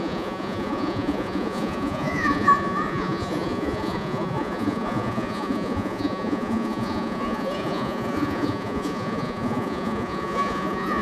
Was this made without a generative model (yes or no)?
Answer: no